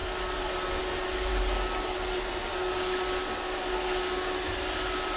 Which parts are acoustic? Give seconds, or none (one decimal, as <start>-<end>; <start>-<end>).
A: 0.0-5.2